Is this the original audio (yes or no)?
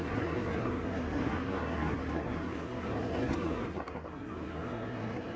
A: no